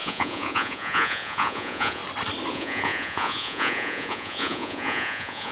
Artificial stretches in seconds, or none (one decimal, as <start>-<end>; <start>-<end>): 0.0-2.0; 2.5-5.5